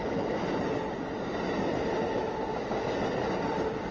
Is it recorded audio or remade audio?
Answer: recorded